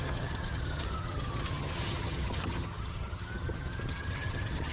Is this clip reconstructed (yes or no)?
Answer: yes